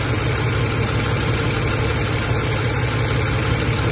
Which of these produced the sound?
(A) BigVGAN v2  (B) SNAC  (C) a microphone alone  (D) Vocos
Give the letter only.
C